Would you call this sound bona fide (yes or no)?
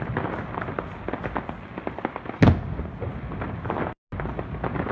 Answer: yes